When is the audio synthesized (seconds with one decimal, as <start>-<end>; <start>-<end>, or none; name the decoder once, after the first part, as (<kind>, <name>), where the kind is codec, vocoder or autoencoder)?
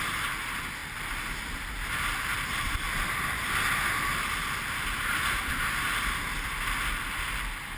none